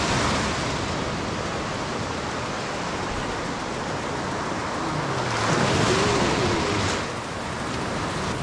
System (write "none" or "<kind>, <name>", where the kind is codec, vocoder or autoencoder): none